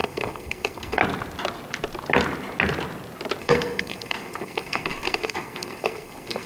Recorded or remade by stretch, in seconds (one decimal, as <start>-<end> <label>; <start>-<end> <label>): 0.0-1.0 remade; 1.0-3.4 recorded; 3.4-6.5 remade